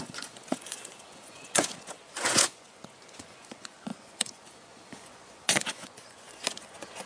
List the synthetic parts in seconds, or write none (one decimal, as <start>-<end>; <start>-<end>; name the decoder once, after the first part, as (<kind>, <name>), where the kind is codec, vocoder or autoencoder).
0.0-7.1 (vocoder, Vocos)